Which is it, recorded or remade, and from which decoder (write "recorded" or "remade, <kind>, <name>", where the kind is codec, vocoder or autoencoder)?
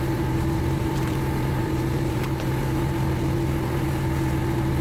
remade, vocoder, BigVGAN v2